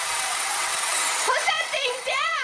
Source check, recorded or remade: remade